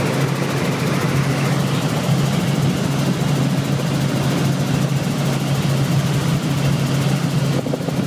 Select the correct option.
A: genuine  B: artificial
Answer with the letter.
A